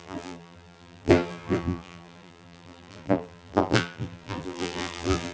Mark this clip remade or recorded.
remade